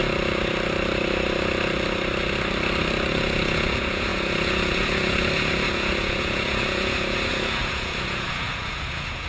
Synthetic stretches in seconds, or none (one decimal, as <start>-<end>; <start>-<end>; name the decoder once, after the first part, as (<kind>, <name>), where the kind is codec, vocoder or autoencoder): 3.1-9.3 (vocoder, Vocos)